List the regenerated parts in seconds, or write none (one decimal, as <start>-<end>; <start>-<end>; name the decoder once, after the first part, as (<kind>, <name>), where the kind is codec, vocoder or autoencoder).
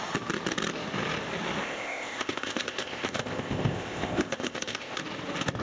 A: 1.6-5.0 (codec, ZipCodec)